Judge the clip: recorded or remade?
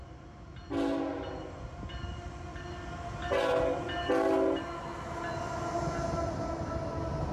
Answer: recorded